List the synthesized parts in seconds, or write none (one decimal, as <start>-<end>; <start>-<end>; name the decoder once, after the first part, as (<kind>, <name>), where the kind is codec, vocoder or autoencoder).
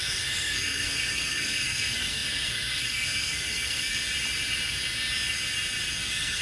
0.0-4.0 (codec, SNAC); 5.9-6.4